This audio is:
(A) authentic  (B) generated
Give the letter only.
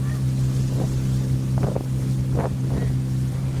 A